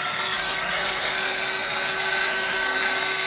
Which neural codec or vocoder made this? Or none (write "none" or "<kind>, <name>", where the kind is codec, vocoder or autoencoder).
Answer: codec, SNAC